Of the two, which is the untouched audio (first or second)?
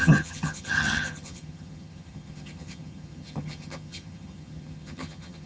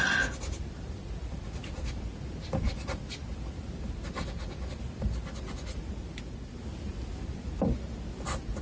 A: second